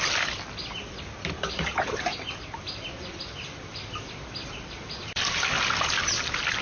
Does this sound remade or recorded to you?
recorded